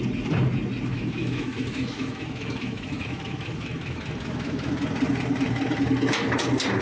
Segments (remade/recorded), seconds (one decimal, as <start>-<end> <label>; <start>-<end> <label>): 0.0-0.9 recorded; 0.9-4.7 remade; 4.7-6.8 recorded